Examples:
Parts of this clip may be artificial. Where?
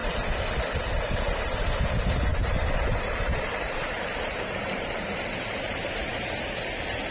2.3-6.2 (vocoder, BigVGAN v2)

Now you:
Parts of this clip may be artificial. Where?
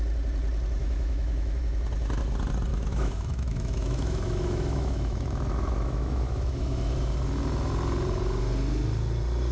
0.8-1.6 (autoencoder, DAC-VAE); 2.7-6.8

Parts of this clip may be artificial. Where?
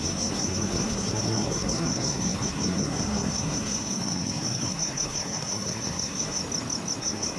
0.0-6.4 (codec, SNAC); 7.0-7.4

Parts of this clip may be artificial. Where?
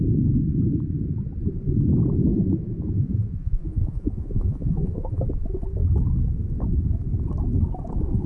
2.3-5.2 (vocoder, Vocos)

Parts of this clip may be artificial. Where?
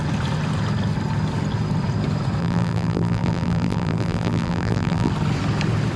2.4-5.1 (vocoder, BigVGAN v2)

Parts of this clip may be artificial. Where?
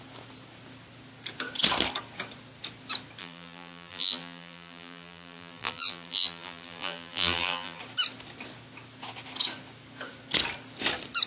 3.2-7.8 (vocoder, BigVGAN v2)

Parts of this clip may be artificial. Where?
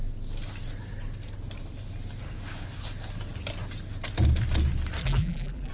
5.0-5.7 (vocoder, BigVGAN v2)